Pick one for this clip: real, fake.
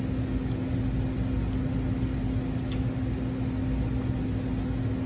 real